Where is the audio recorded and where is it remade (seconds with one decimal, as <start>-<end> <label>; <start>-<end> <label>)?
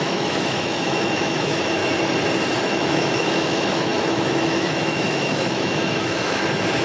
0.0-1.8 remade; 1.8-2.6 recorded; 2.6-6.8 remade